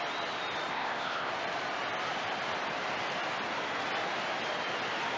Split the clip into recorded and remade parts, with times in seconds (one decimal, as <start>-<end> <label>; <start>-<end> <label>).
0.0-0.7 recorded; 0.7-1.3 remade; 1.3-5.2 recorded